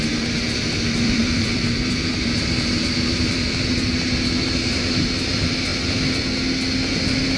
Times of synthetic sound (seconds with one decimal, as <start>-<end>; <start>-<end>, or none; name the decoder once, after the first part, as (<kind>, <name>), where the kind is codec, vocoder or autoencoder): 0.0-5.7 (vocoder, BigVGAN v2)